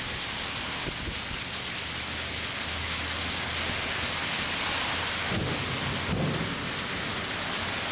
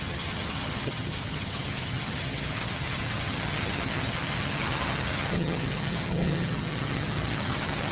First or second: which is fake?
second